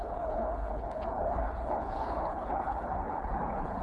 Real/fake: fake